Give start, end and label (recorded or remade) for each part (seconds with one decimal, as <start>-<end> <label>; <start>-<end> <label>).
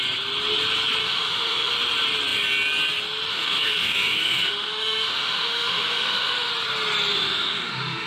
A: 0.0-1.0 recorded; 1.0-1.7 remade; 1.7-3.3 recorded; 3.3-6.5 remade; 6.5-7.1 recorded; 7.1-8.1 remade